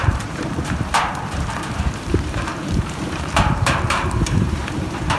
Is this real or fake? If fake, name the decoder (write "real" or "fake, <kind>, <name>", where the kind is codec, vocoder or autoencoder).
fake, vocoder, BigVGAN v2